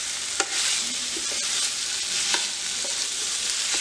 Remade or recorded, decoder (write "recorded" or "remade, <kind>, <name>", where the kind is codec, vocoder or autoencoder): recorded